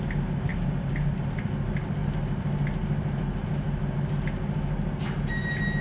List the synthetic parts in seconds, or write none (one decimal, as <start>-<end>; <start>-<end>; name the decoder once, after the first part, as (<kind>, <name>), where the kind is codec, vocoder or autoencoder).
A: none